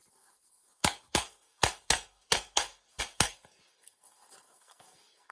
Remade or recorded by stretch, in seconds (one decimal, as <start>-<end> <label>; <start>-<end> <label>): 0.0-5.3 remade